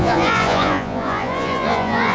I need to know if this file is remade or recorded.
remade